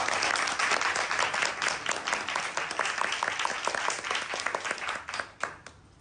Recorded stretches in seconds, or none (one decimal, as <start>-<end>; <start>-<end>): 0.0-6.0